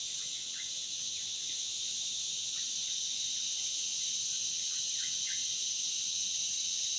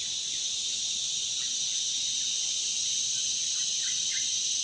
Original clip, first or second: second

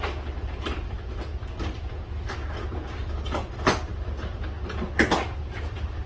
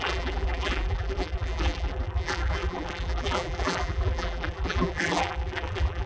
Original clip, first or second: first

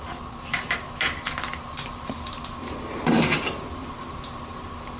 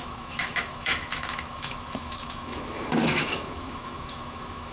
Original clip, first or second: first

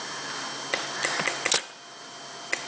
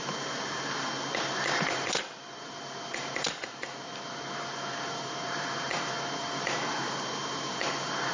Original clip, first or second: first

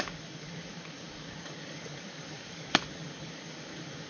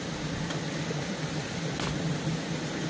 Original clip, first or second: second